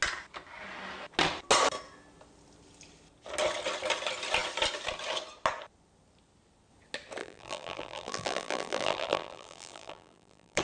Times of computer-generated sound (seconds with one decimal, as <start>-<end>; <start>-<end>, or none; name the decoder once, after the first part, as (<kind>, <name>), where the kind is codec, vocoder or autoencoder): 7.2-10.6 (vocoder, BigVGAN v2)